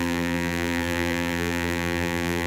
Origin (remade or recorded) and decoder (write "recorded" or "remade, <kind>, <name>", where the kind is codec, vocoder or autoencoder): remade, vocoder, BigVGAN v2